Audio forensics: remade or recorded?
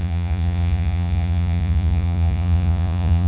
remade